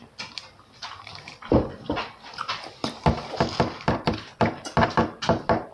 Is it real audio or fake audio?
fake